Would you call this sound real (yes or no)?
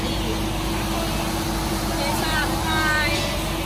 yes